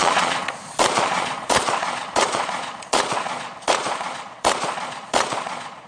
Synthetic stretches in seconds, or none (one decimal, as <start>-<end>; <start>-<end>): 0.0-5.9